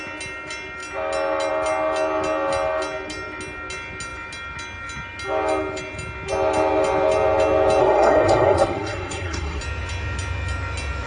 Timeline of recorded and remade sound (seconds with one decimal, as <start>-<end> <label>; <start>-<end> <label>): 0.0-7.8 recorded; 7.8-9.6 remade; 9.6-11.1 recorded